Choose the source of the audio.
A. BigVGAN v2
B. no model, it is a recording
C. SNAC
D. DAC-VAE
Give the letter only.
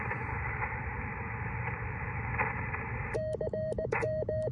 A